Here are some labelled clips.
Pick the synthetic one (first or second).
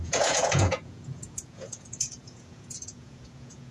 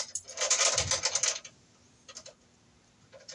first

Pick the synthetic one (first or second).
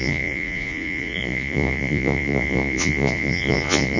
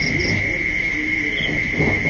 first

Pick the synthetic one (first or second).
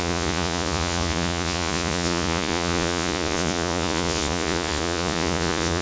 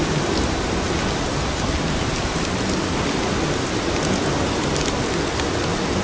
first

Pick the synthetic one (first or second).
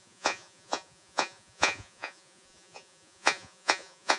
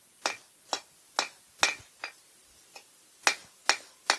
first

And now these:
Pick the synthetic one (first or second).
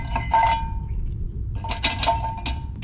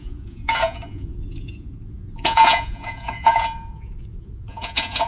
second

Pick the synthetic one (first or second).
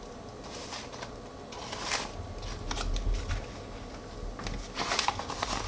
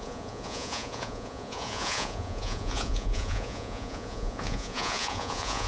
second